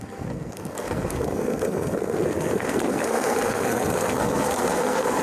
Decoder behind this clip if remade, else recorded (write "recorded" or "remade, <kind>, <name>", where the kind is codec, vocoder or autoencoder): remade, codec, SNAC